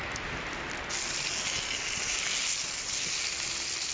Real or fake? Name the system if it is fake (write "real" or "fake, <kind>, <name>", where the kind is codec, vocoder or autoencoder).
real